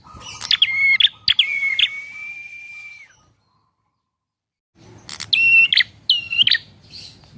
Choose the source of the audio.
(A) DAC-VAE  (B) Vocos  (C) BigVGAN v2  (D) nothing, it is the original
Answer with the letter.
D